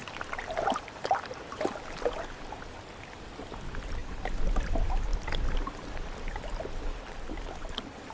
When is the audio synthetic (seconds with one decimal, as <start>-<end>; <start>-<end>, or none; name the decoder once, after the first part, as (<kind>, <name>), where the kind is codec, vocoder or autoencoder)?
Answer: 4.0-4.5 (vocoder, BigVGAN v2)